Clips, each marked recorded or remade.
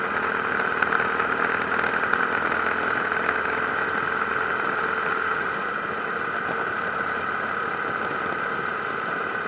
recorded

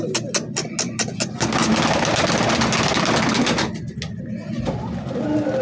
recorded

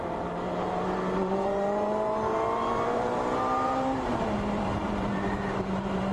remade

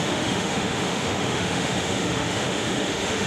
remade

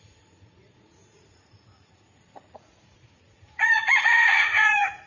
remade